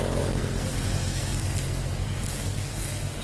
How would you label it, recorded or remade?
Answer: remade